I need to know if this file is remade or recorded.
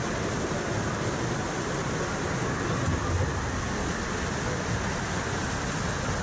recorded